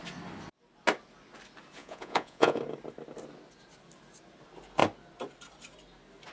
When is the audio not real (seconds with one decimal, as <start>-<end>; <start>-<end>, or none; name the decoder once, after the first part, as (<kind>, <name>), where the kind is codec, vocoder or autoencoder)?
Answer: 1.8-2.6 (vocoder, Vocos)